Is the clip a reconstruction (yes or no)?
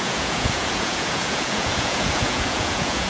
yes